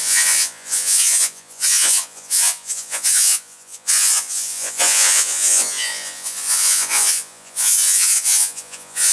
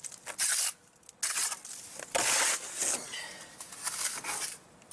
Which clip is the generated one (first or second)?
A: first